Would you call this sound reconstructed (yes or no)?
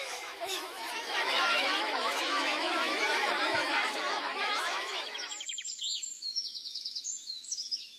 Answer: yes